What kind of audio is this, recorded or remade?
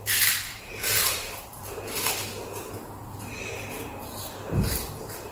remade